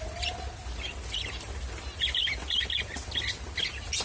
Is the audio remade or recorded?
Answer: recorded